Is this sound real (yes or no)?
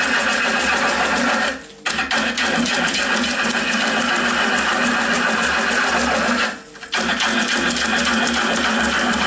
yes